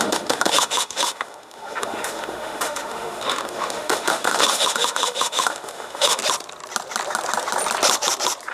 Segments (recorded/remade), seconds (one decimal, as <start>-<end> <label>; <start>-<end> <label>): 0.0-6.2 remade; 6.2-8.5 recorded